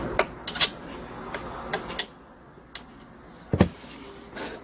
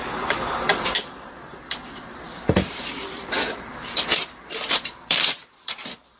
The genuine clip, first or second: first